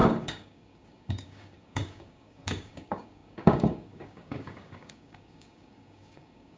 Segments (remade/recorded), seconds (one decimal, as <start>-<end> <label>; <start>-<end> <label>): 0.0-6.6 remade